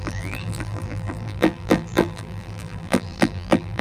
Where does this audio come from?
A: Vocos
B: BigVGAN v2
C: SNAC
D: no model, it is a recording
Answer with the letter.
B